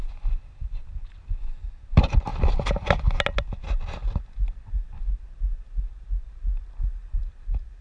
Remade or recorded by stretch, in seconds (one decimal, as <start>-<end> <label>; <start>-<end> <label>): 0.0-2.3 recorded; 2.3-3.2 remade; 3.2-7.8 recorded